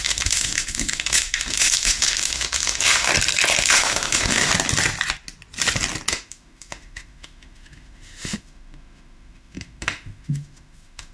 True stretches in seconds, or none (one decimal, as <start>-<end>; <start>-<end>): 3.1-3.6; 4.5-6.1